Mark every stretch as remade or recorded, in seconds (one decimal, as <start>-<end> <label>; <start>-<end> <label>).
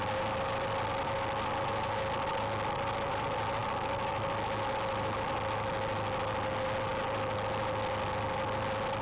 0.0-9.0 recorded